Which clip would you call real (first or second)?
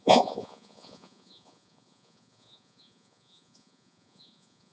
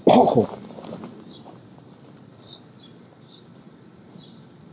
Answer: second